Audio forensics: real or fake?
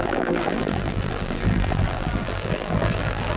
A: fake